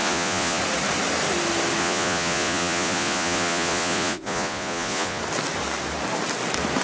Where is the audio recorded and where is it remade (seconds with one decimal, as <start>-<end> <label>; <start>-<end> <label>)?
0.0-0.6 remade; 0.6-1.8 recorded; 1.8-5.2 remade; 5.2-6.8 recorded